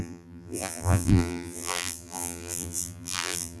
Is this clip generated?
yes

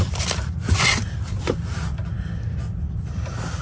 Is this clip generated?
yes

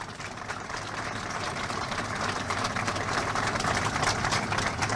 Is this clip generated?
yes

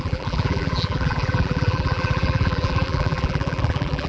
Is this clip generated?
yes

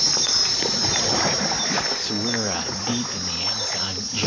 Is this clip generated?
no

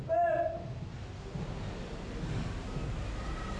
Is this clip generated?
no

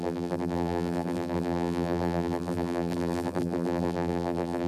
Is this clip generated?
yes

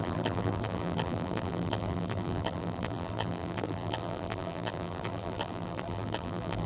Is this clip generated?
yes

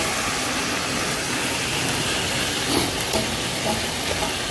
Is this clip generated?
no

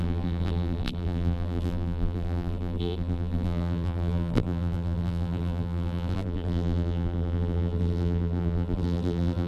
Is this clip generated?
yes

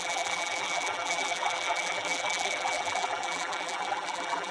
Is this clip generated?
yes